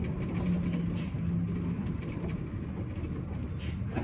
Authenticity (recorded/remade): recorded